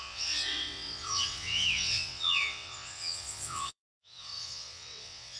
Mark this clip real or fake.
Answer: fake